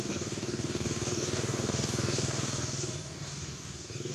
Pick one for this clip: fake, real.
fake